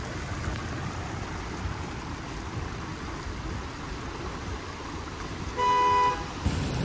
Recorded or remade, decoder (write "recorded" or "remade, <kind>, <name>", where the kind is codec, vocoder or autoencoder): recorded